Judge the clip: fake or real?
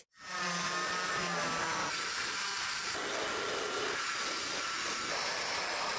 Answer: real